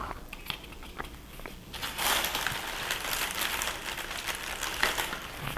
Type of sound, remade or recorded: recorded